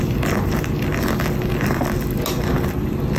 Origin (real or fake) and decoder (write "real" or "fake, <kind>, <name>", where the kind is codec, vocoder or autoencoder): real